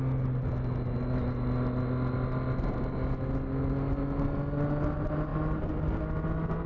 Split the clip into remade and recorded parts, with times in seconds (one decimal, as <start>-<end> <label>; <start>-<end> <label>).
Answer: 0.0-6.7 recorded

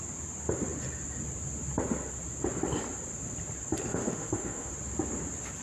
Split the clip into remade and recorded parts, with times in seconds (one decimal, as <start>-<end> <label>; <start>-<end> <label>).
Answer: 0.0-3.9 recorded; 3.9-4.7 remade; 4.7-5.6 recorded

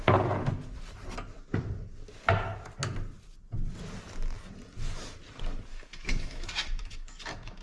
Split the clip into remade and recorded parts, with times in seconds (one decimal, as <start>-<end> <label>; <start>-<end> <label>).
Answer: 0.0-5.7 recorded; 5.7-7.6 remade

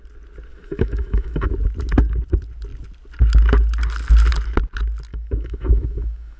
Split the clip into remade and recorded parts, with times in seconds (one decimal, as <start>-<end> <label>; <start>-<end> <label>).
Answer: 0.0-0.5 recorded; 0.5-1.5 remade; 1.5-5.1 recorded; 5.1-6.4 remade

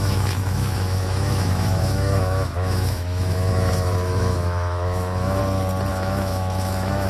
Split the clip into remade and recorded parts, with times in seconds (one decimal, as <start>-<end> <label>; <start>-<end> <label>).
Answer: 0.0-5.4 remade; 5.4-5.9 recorded; 5.9-7.1 remade